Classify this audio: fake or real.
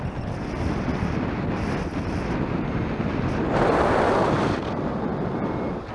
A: real